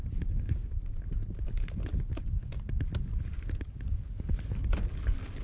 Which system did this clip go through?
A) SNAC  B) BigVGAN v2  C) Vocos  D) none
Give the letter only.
D